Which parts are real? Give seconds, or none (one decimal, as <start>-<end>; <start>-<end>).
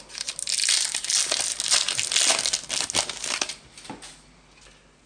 0.0-5.1